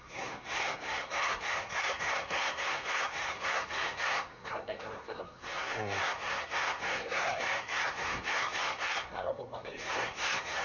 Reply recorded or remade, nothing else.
remade